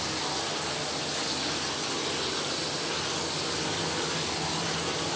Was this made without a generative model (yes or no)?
yes